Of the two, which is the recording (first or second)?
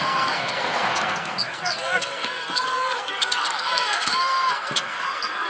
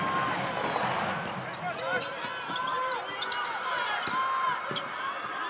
second